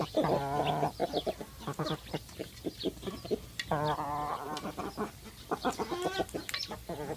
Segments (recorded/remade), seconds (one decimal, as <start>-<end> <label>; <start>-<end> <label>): 0.0-7.2 recorded